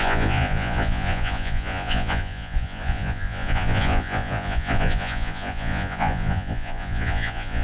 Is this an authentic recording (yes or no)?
no